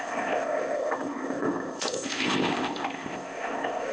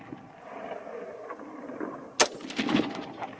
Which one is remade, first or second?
first